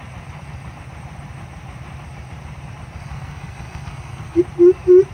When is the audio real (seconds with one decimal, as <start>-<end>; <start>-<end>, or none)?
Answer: 0.0-3.0; 4.4-5.1